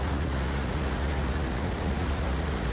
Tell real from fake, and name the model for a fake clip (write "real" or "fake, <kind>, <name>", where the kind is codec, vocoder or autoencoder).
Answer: fake, vocoder, Vocos